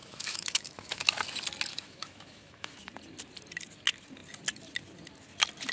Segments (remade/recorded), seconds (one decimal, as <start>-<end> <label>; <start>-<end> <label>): 0.0-1.1 remade; 1.1-1.7 recorded; 1.7-2.9 remade; 2.9-5.7 recorded